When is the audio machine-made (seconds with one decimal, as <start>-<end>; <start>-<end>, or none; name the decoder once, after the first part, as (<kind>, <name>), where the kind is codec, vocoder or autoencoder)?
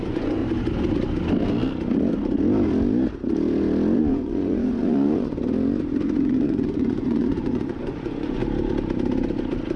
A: 0.0-0.4 (vocoder, Vocos); 4.0-5.4; 6.2-8.4